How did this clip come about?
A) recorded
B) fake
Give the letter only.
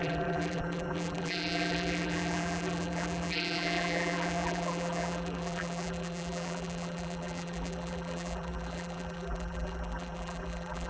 B